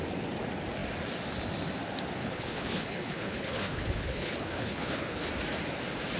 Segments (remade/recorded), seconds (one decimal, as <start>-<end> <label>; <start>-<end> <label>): 0.0-2.2 recorded; 2.2-5.3 remade; 5.3-6.2 recorded

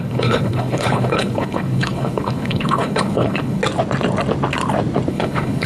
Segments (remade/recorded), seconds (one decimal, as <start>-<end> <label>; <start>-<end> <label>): 0.0-3.6 remade; 3.6-5.1 recorded; 5.1-5.7 remade

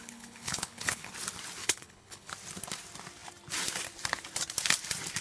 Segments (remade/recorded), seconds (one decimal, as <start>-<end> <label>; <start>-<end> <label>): 0.0-1.1 remade; 1.1-1.6 recorded; 1.6-2.3 remade; 2.3-5.2 recorded

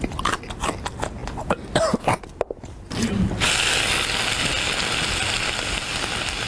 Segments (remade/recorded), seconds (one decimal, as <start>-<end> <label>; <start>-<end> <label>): 0.0-6.5 recorded

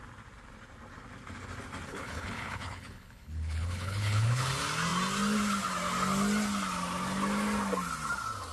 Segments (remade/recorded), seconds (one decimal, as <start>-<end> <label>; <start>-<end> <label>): 0.0-1.9 recorded; 1.9-4.5 remade; 4.5-8.5 recorded

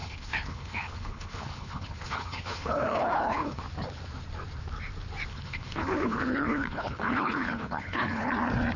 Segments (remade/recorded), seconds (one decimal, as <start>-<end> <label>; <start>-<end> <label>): 0.0-3.6 remade; 3.6-5.3 recorded; 5.3-8.3 remade; 8.3-8.8 recorded